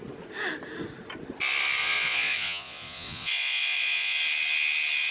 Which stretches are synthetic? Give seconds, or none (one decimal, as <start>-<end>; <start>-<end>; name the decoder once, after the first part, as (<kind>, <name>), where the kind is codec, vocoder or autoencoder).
1.8-4.2 (vocoder, Vocos)